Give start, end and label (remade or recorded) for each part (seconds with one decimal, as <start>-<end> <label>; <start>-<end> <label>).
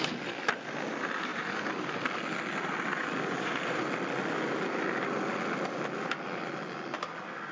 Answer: 0.0-7.5 recorded